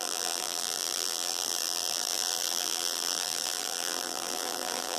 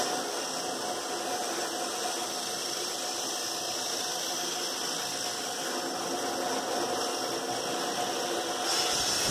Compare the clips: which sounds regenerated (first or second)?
first